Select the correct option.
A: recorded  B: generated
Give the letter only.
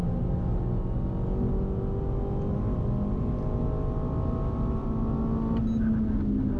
A